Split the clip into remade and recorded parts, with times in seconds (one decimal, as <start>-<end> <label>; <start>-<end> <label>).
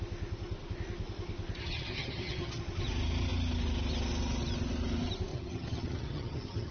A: 0.0-1.6 recorded; 1.6-2.6 remade; 2.6-5.3 recorded; 5.3-6.7 remade